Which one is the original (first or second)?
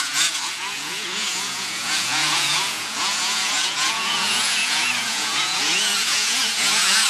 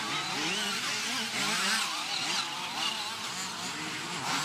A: second